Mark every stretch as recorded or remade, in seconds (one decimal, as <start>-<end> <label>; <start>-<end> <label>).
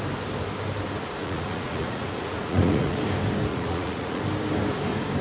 0.0-1.2 recorded; 1.2-3.0 remade; 3.0-3.5 recorded; 3.5-4.2 remade; 4.2-5.2 recorded